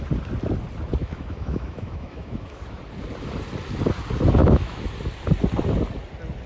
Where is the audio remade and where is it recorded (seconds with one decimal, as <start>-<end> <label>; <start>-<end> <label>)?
0.0-1.0 recorded; 1.0-2.8 remade; 2.8-4.4 recorded; 4.4-4.9 remade; 4.9-6.5 recorded